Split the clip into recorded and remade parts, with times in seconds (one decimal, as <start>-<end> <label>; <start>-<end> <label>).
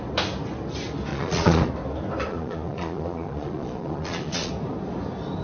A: 0.0-1.1 recorded; 1.1-1.7 remade; 1.7-2.3 recorded; 2.3-4.5 remade; 4.5-5.4 recorded